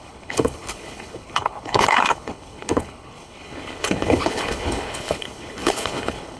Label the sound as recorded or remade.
remade